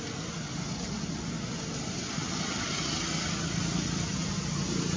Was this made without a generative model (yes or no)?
yes